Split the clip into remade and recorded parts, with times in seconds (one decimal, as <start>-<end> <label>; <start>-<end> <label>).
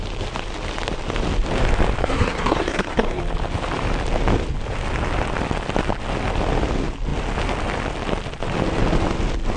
0.0-2.0 recorded; 2.0-3.2 remade; 3.2-9.6 recorded